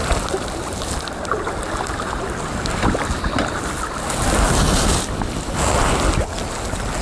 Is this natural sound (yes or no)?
yes